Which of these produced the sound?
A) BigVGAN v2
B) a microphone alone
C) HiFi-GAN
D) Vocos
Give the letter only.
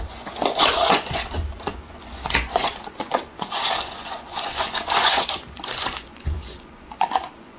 D